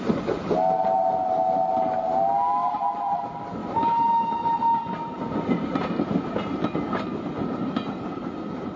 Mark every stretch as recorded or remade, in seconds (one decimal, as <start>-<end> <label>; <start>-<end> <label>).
0.0-2.6 recorded; 2.6-3.2 remade; 3.2-8.8 recorded